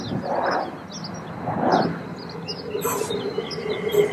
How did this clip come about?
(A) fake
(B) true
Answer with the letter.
B